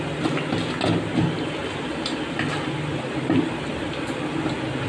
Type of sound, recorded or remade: recorded